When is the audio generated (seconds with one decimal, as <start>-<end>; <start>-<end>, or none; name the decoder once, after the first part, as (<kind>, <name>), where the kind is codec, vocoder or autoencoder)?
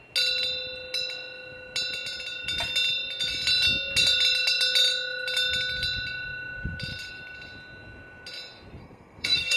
8.8-9.6 (codec, SNAC)